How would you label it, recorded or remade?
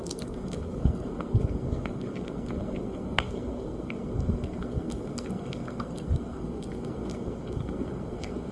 remade